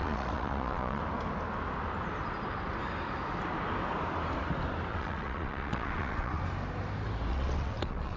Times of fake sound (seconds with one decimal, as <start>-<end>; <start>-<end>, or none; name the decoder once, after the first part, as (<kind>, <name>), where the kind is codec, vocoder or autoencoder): 0.0-1.0 (vocoder, WaveNeXt); 4.9-6.4; 7.3-8.2